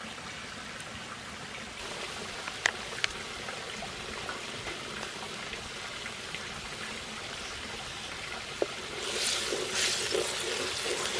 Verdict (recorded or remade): recorded